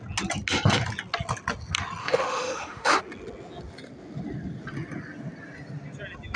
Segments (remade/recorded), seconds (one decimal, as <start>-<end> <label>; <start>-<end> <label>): 0.0-2.0 recorded; 2.0-3.0 remade; 3.0-6.4 recorded